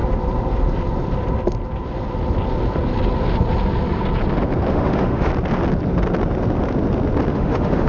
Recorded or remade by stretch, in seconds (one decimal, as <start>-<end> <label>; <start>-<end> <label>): 0.0-4.7 recorded; 4.7-5.3 remade; 5.3-7.3 recorded; 7.3-7.9 remade